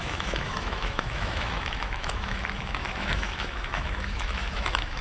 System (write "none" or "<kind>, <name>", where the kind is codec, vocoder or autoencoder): autoencoder, DAC-VAE